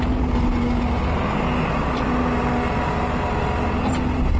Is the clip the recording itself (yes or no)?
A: yes